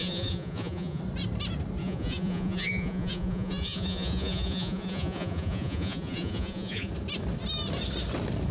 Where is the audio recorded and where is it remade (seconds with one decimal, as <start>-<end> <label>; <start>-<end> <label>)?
0.0-1.0 remade; 1.0-1.8 recorded; 1.8-6.9 remade; 6.9-8.5 recorded